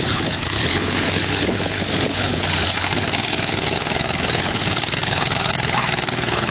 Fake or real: fake